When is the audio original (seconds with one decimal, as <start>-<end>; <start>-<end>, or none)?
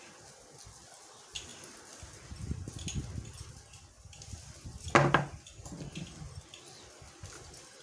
0.0-7.8